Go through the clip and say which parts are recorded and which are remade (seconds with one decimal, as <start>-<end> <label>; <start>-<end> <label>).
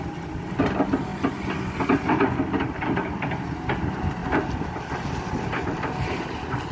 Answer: 0.0-6.7 recorded